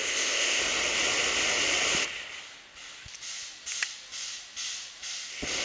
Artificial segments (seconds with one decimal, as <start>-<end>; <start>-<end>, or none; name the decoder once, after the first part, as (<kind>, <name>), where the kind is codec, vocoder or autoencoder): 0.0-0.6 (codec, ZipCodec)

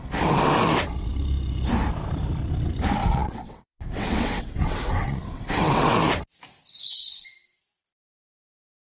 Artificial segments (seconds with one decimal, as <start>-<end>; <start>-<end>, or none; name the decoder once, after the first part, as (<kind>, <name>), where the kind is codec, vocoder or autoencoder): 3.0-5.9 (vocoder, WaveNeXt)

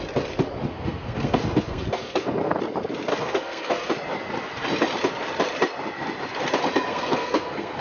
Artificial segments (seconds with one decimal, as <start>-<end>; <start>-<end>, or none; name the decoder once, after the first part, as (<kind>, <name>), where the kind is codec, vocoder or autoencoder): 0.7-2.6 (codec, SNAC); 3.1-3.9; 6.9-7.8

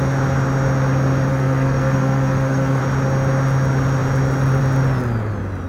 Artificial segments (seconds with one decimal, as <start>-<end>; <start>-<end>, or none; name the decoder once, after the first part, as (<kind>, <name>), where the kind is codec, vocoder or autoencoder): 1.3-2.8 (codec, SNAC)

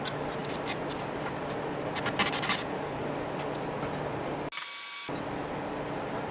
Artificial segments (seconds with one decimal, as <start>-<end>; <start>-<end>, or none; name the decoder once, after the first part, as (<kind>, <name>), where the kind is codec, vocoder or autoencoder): none

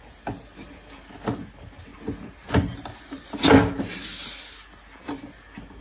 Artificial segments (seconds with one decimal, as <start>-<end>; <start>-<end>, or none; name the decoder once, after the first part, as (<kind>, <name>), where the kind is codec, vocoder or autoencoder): none